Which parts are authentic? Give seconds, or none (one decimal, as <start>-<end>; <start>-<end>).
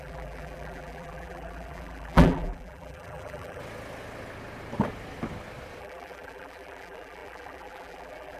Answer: 3.6-5.8